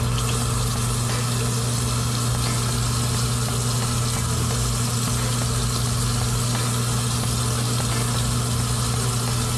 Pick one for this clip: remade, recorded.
recorded